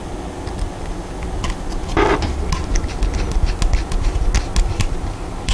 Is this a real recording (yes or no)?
yes